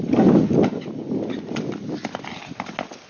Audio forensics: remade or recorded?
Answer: recorded